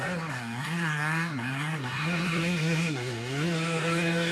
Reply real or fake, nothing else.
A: fake